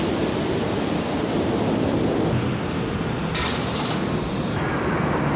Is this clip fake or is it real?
real